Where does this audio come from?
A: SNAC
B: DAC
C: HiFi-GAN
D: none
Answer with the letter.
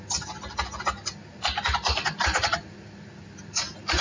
D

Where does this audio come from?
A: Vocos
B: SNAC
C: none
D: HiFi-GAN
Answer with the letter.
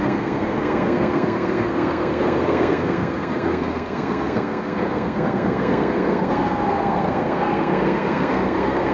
B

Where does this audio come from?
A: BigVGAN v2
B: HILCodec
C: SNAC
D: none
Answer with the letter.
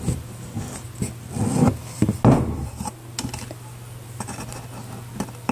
D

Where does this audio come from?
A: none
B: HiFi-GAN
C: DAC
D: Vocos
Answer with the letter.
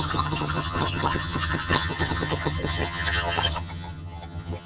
B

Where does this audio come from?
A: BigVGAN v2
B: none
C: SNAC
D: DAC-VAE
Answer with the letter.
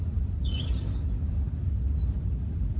B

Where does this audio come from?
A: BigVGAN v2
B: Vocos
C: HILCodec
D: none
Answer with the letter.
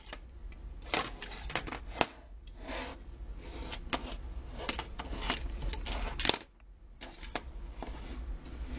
D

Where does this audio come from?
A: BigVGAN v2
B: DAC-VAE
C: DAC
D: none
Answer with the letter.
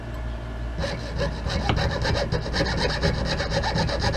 D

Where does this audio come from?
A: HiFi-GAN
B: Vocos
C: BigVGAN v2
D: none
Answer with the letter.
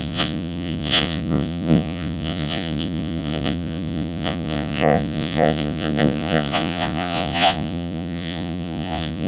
B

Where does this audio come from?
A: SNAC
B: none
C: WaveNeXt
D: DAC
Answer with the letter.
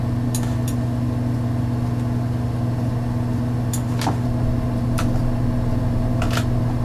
B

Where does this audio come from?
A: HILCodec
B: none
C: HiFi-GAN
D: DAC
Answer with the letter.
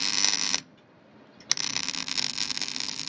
B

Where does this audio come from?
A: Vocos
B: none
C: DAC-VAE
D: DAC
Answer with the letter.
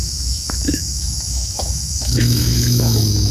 C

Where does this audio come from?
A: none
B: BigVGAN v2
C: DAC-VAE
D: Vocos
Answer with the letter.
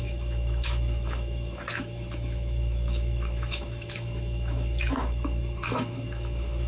C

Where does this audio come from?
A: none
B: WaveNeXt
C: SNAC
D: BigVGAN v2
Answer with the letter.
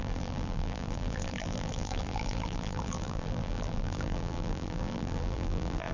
D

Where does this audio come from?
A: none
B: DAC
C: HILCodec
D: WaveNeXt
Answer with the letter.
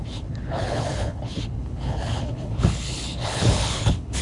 C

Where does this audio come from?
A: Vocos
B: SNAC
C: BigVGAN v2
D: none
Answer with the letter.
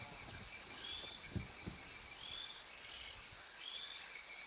D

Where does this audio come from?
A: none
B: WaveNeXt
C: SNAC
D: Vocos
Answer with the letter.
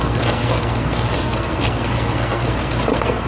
C